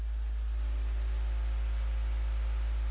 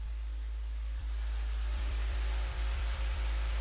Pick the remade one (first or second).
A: second